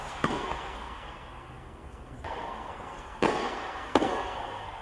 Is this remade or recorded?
remade